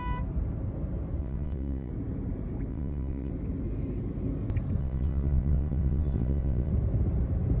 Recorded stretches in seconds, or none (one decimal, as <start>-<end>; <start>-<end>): 0.0-1.2; 1.9-2.7; 3.3-4.8; 6.7-7.6